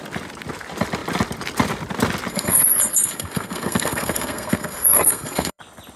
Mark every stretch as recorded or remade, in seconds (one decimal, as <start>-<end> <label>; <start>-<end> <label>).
0.0-2.3 recorded; 2.3-5.6 remade; 5.6-6.0 recorded